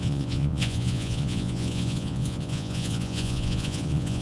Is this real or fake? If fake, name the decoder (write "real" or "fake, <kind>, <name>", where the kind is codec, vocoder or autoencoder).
fake, vocoder, Vocos